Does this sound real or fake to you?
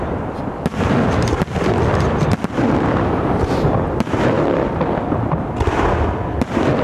real